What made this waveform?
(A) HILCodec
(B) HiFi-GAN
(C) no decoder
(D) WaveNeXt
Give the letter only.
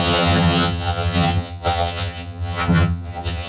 B